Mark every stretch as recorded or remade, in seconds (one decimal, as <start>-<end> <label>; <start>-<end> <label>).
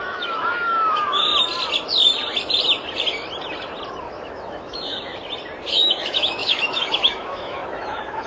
0.0-1.3 remade; 1.3-4.0 recorded; 4.0-5.1 remade; 5.1-5.7 recorded; 5.7-8.3 remade